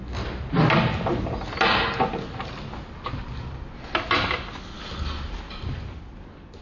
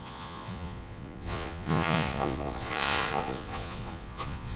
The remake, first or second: second